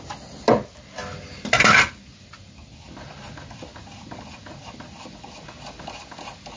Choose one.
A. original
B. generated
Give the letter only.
A